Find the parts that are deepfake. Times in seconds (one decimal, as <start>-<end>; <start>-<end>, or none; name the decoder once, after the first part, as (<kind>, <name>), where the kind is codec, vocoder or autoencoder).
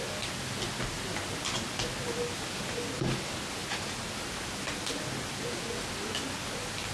none